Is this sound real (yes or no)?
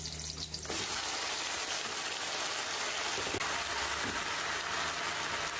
yes